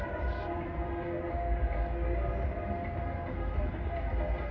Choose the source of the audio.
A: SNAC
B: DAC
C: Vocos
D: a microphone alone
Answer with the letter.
D